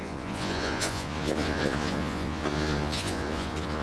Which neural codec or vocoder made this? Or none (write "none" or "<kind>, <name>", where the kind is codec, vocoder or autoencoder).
vocoder, Vocos